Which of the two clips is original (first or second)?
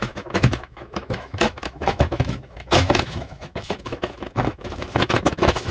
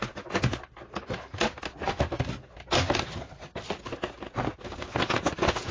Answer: second